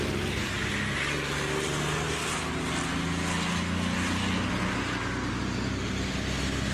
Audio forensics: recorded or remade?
recorded